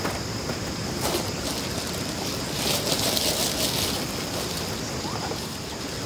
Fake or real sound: real